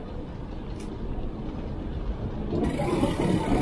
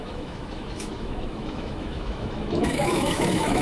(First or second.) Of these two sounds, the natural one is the first